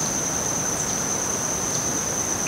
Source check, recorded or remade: recorded